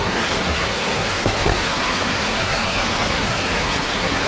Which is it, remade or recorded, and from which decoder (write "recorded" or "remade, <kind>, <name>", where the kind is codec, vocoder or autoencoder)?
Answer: remade, codec, SNAC